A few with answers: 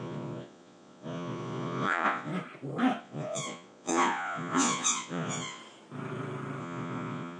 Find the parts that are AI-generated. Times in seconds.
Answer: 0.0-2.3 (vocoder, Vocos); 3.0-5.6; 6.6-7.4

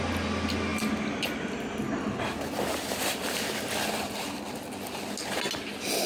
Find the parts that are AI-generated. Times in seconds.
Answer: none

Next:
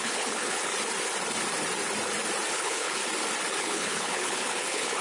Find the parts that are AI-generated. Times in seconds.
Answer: 0.0-0.7 (codec, HILCodec); 2.5-3.0; 3.6-5.0

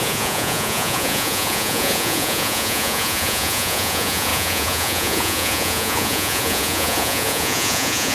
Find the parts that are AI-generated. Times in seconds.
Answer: 0.0-8.1 (vocoder, Vocos)